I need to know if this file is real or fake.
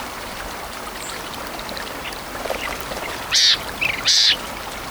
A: fake